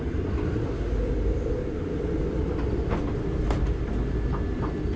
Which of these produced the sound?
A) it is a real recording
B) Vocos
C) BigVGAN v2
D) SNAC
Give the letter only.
A